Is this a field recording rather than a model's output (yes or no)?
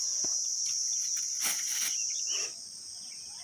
yes